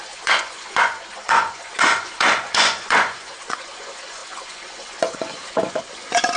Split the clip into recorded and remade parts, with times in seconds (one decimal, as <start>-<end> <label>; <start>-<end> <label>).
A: 0.0-6.4 remade